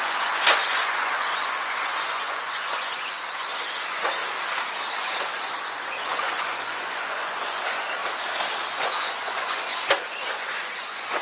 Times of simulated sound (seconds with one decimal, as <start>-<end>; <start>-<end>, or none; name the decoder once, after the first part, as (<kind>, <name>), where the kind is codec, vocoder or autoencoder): 0.0-4.2 (vocoder, Vocos); 5.0-8.0; 8.7-11.2